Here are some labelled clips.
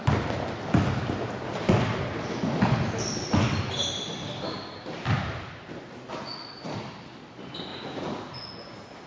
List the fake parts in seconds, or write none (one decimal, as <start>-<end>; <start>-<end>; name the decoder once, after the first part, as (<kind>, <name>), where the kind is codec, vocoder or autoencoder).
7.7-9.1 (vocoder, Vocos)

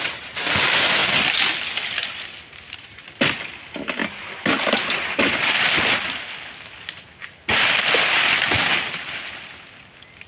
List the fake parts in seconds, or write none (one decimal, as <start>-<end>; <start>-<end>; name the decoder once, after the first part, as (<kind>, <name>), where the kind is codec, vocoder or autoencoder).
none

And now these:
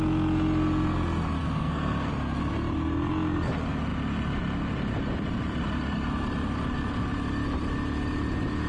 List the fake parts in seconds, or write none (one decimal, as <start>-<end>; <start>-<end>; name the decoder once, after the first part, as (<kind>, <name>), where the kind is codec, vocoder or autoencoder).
1.4-2.1 (codec, SNAC)